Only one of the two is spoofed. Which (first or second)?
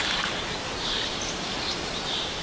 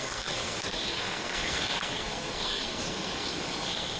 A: second